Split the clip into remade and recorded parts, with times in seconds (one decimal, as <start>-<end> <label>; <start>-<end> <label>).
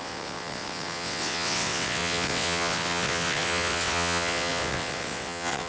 0.0-5.7 remade